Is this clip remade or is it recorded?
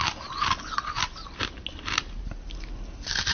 recorded